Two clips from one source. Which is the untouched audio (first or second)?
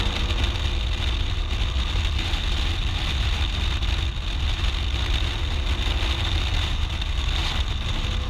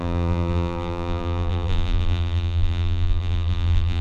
first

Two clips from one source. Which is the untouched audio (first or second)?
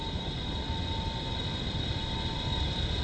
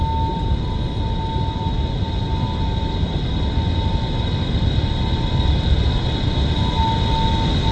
second